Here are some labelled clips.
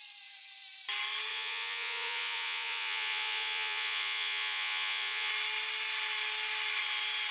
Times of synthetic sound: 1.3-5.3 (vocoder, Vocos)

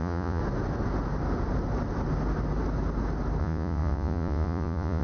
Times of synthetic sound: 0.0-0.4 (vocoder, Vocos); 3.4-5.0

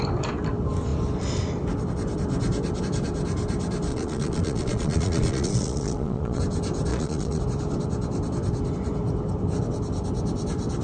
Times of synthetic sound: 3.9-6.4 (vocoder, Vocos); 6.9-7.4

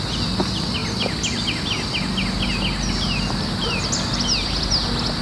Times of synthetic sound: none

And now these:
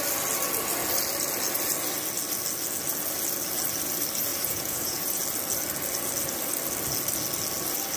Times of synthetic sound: 4.3-5.2 (vocoder, Vocos)

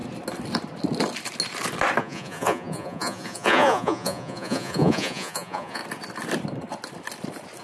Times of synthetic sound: 2.0-5.8 (vocoder, Vocos)

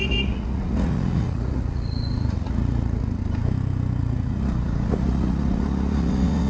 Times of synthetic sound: 0.0-3.2 (vocoder, Vocos); 4.0-6.5

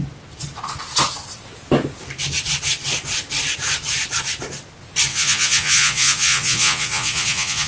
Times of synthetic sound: 5.1-7.7 (vocoder, Vocos)